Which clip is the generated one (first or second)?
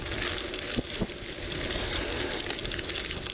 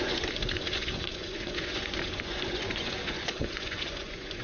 second